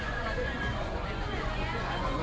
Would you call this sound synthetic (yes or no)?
yes